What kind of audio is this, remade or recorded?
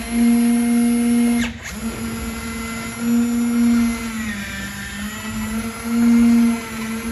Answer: recorded